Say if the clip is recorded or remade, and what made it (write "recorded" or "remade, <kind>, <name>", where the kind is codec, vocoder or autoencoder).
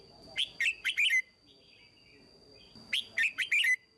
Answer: recorded